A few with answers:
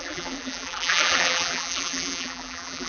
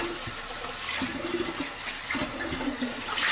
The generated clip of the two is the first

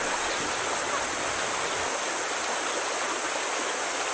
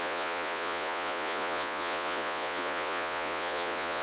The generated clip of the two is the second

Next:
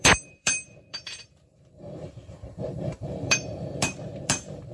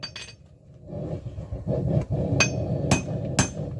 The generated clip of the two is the first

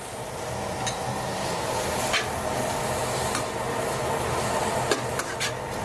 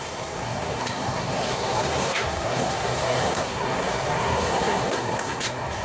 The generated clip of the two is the second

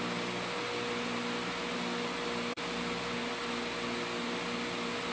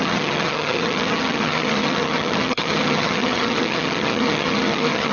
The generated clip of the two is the second